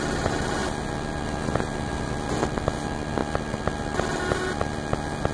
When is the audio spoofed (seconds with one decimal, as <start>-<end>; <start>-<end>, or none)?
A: none